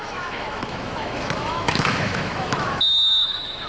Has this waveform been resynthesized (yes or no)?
yes